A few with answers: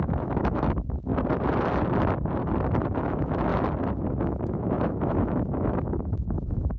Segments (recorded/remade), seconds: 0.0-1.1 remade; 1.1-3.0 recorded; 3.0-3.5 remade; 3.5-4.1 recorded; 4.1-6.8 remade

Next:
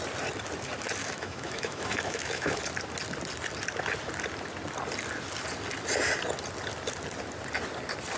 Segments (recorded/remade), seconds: 0.0-1.0 recorded; 1.0-2.6 remade; 2.6-8.2 recorded

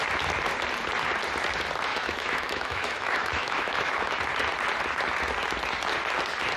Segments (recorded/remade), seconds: 0.0-1.9 recorded; 1.9-4.2 remade; 4.2-6.6 recorded

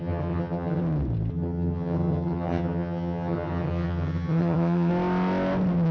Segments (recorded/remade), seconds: 0.0-0.8 remade; 0.8-1.3 recorded; 1.3-4.9 remade; 4.9-5.9 recorded

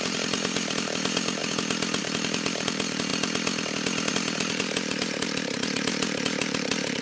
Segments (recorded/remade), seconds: 0.0-1.4 remade; 1.4-2.0 recorded; 2.0-3.1 remade; 3.1-4.1 recorded; 4.1-7.0 remade

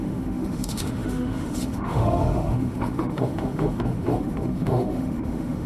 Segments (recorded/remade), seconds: 0.0-5.7 remade

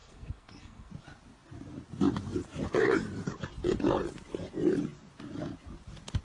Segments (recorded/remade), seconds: 0.0-0.9 remade; 0.9-6.2 recorded

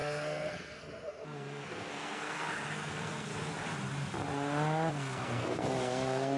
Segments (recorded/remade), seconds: 0.0-3.3 remade; 3.3-4.9 recorded; 4.9-6.4 remade